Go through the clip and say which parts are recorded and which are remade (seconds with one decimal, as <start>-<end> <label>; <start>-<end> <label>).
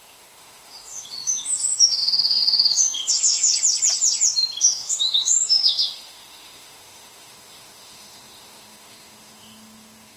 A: 0.0-3.5 remade; 3.5-4.6 recorded; 4.6-10.2 remade